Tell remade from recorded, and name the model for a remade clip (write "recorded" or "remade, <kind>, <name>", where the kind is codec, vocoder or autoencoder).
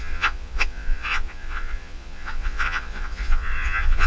remade, vocoder, Vocos